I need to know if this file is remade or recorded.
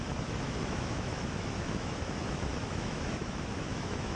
remade